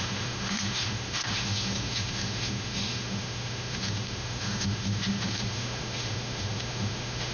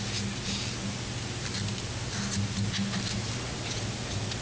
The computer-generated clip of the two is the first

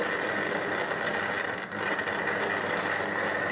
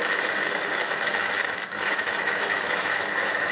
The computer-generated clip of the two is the second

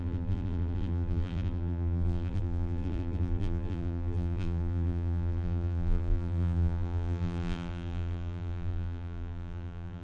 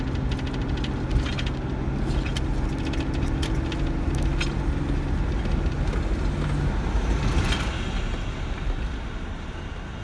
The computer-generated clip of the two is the first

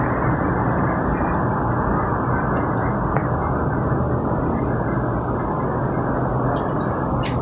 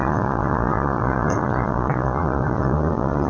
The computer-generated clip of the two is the second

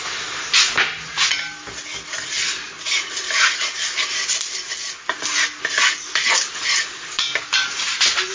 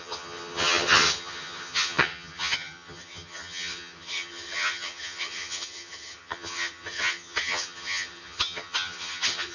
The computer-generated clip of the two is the second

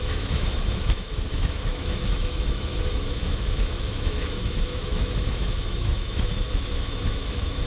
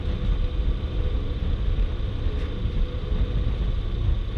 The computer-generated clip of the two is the first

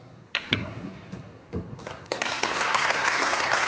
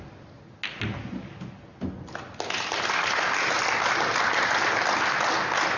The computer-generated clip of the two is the first